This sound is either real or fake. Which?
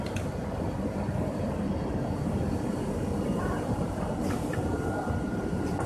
fake